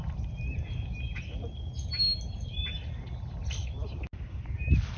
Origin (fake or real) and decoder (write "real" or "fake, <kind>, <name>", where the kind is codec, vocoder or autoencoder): real